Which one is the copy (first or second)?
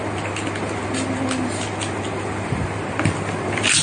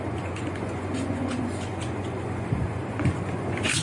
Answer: second